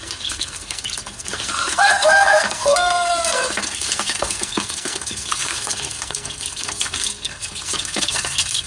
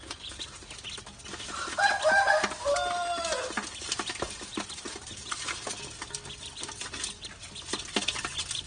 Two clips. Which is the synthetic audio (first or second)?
first